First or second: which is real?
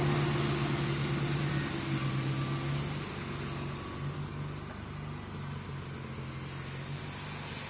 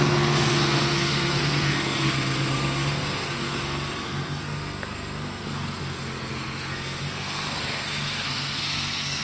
first